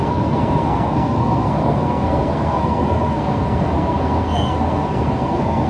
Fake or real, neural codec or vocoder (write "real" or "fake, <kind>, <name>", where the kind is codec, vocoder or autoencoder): fake, codec, SNAC